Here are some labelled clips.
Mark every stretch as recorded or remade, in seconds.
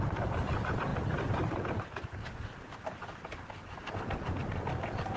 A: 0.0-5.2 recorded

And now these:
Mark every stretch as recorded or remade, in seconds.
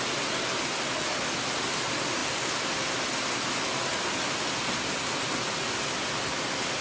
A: 0.0-6.8 recorded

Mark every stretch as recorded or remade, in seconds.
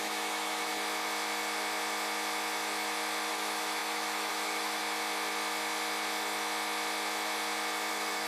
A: 0.0-0.7 remade; 0.7-3.3 recorded; 3.3-4.8 remade; 4.8-7.9 recorded; 7.9-8.3 remade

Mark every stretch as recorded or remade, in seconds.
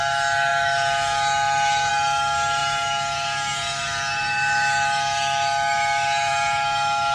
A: 0.0-7.1 remade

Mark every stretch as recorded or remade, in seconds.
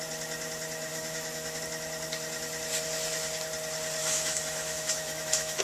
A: 0.0-0.9 recorded; 0.9-1.6 remade; 1.6-4.0 recorded; 4.0-5.6 remade